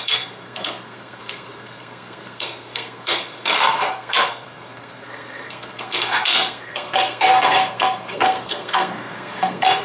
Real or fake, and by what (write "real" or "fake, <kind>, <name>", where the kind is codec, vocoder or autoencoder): fake, codec, SNAC